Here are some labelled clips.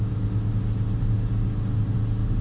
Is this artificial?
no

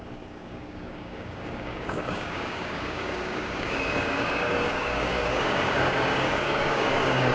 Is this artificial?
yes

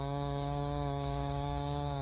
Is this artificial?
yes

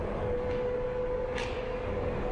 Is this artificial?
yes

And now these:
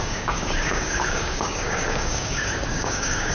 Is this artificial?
yes